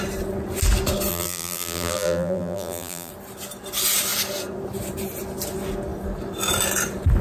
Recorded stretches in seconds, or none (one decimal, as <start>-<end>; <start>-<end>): 0.0-1.1; 3.1-7.2